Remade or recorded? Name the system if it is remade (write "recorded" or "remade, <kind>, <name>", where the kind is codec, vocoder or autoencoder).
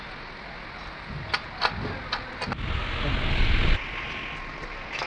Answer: recorded